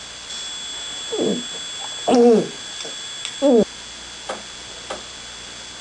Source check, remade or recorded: recorded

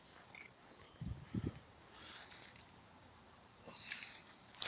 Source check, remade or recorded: remade